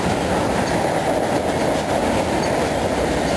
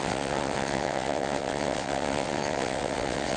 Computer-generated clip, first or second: second